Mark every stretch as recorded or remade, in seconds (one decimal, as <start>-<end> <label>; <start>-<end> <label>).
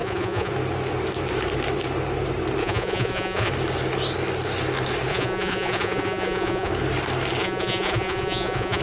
0.0-0.5 remade; 0.5-2.6 recorded; 2.6-3.5 remade; 3.5-5.1 recorded; 5.1-6.7 remade; 6.7-7.4 recorded; 7.4-8.8 remade